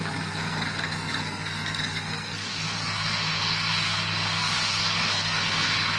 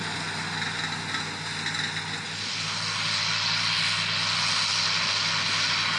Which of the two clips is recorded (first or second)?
second